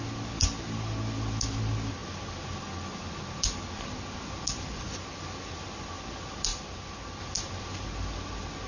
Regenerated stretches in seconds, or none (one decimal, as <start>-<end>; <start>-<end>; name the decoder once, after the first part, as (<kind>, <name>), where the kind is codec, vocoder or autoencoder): none